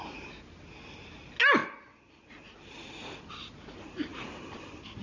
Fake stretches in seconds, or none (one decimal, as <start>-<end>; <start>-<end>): none